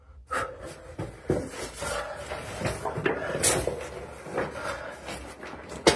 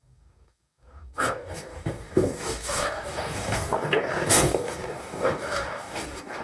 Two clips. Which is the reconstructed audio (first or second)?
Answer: second